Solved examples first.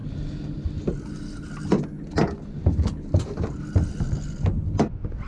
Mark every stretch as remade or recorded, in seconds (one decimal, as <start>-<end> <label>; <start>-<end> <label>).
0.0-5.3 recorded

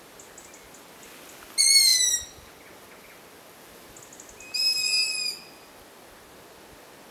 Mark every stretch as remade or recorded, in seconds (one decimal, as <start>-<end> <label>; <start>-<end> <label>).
0.0-7.1 recorded

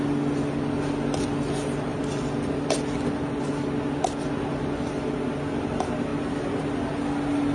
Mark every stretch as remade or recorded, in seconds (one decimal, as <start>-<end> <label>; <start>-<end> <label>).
0.0-7.5 recorded